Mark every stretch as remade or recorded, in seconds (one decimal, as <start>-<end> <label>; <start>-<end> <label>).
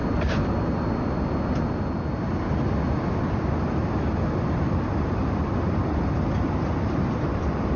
0.0-4.4 recorded; 4.4-7.8 remade